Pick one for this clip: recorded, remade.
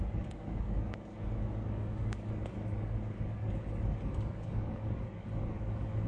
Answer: remade